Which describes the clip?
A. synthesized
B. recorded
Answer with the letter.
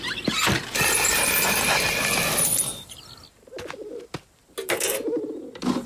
B